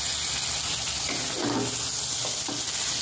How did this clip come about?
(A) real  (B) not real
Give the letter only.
A